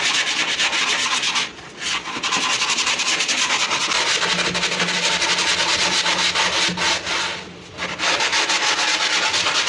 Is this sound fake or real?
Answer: real